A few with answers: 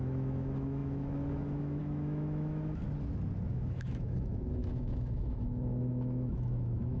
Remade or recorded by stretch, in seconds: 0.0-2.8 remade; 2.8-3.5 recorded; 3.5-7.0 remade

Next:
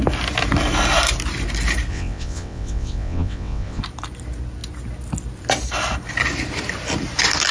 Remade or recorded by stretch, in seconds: 0.0-1.9 recorded; 1.9-3.8 remade; 3.8-7.5 recorded

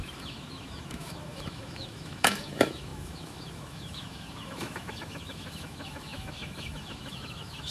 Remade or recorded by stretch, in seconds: 0.0-7.7 remade

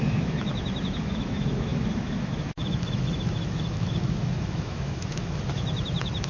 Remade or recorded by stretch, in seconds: 0.0-6.3 remade